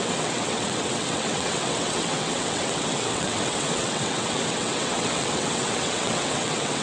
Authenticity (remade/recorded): remade